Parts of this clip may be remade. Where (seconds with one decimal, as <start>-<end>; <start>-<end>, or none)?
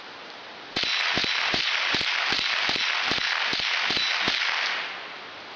none